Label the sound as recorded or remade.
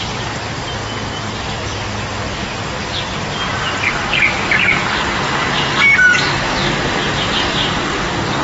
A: recorded